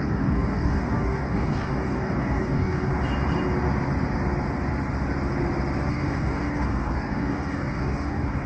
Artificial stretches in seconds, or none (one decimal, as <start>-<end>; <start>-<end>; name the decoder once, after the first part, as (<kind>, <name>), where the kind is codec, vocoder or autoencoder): 0.0-2.9 (codec, DAC); 5.9-8.5